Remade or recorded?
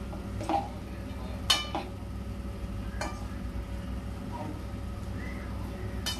recorded